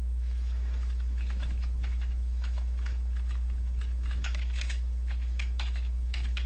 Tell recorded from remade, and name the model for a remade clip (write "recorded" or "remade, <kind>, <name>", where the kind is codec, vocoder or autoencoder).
remade, autoencoder, DAC-VAE